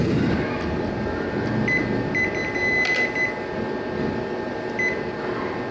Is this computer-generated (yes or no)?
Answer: no